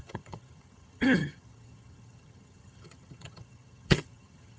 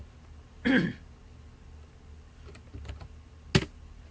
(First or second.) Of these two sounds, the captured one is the second